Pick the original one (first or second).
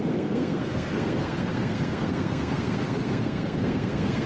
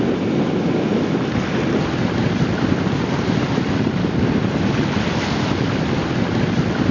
second